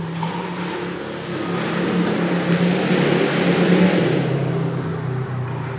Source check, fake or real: real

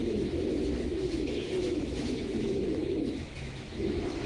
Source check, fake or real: fake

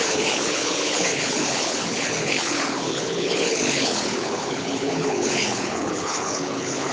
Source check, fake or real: fake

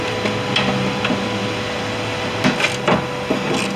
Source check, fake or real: real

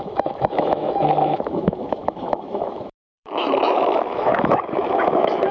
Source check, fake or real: fake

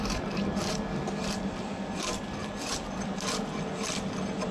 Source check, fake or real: real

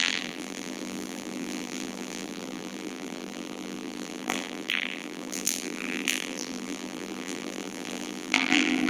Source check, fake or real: fake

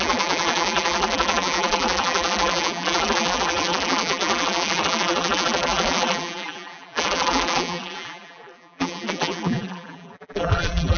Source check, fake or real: fake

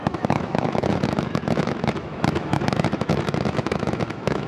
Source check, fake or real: fake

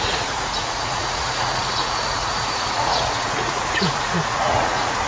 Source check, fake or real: fake